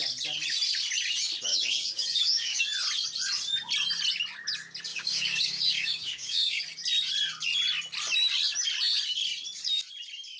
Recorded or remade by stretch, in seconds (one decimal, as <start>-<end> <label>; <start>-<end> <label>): 0.0-1.5 recorded; 1.5-2.6 remade; 2.6-4.9 recorded; 4.9-6.6 remade; 6.6-10.4 recorded